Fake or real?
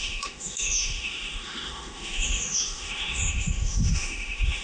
fake